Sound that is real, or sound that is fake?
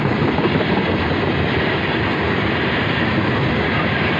real